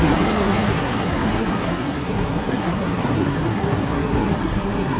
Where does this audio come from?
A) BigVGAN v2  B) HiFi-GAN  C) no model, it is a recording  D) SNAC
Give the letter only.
D